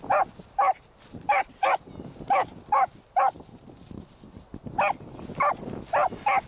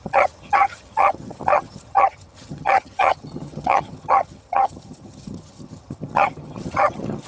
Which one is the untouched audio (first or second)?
first